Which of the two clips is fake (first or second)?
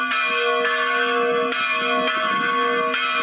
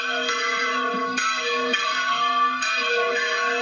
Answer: second